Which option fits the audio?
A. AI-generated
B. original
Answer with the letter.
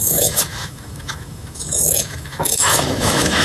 A